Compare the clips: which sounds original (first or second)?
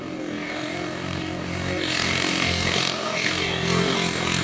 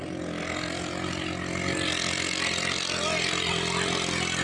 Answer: second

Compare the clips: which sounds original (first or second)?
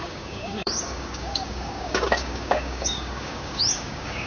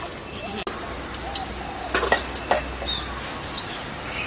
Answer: second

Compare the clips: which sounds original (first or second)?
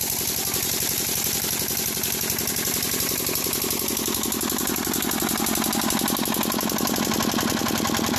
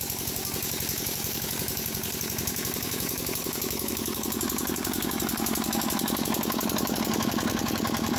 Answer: first